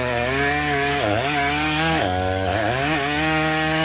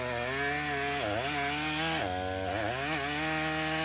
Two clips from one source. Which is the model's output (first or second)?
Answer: first